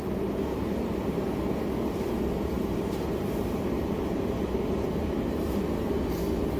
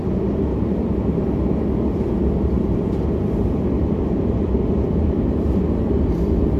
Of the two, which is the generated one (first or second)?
second